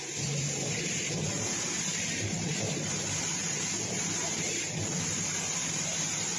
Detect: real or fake fake